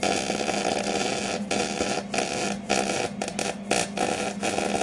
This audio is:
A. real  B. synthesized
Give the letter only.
A